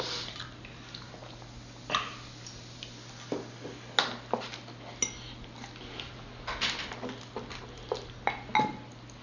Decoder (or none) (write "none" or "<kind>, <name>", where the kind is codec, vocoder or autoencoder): none